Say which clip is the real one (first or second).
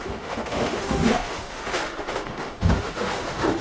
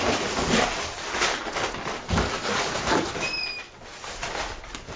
second